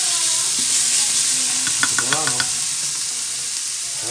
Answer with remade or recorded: recorded